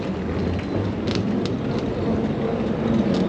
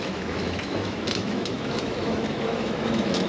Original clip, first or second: first